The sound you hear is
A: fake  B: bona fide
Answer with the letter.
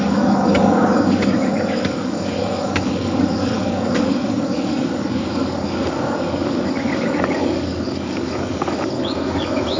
A